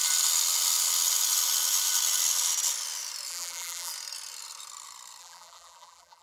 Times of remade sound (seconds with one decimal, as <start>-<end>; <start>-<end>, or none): 3.3-3.9; 5.2-6.2